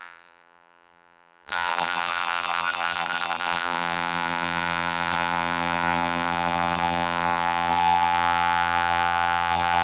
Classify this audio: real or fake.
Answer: fake